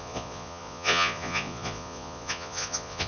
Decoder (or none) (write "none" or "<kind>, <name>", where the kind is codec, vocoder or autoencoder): vocoder, Vocos